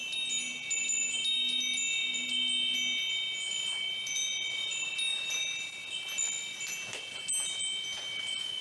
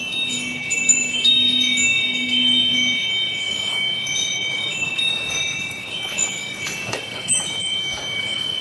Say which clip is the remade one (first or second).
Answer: second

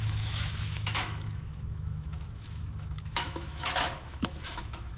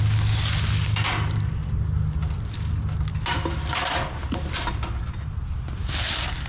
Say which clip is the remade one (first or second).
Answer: first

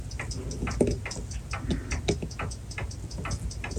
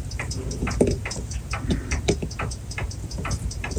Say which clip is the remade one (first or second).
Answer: second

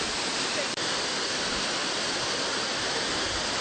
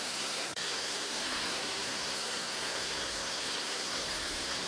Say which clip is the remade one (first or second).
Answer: second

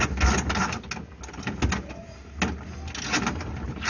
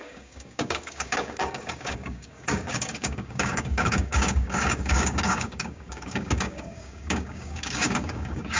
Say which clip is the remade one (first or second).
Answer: second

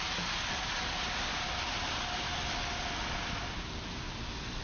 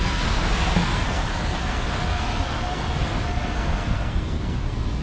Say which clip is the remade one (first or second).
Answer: second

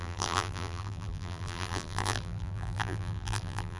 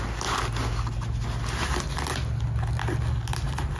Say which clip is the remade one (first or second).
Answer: first